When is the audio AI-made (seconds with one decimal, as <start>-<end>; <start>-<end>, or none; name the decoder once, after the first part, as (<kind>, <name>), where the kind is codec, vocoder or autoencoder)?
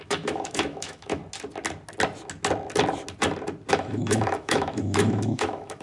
0.0-1.2 (autoencoder, DAC-VAE); 3.7-5.8